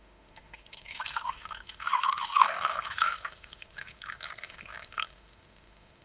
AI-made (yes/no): yes